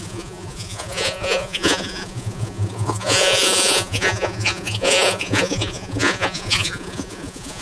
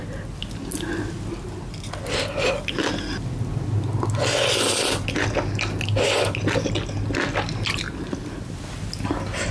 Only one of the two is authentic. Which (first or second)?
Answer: second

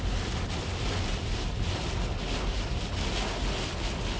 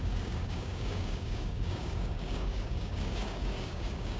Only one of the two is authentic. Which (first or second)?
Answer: first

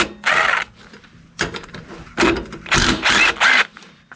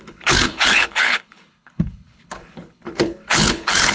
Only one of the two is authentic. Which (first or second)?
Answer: first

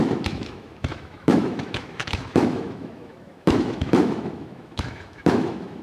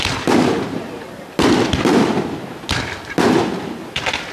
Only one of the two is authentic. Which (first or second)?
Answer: second